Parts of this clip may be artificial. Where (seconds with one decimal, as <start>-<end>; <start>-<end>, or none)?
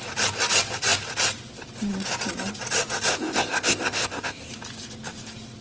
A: 3.1-4.5